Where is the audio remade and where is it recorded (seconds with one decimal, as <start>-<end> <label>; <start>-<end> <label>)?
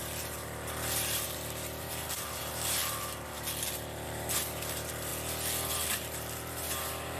0.0-5.1 remade; 5.1-5.7 recorded; 5.7-7.2 remade